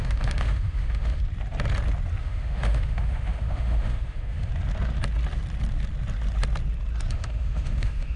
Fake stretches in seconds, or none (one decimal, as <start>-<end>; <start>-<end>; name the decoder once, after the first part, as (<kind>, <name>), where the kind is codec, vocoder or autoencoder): 0.0-1.2 (autoencoder, DAC-VAE); 2.2-4.5; 7.1-8.2